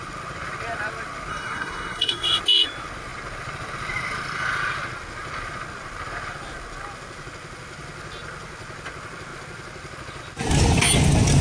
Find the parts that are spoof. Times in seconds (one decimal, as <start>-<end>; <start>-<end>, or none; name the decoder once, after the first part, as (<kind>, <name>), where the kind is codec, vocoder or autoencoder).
1.3-2.4 (codec, SNAC)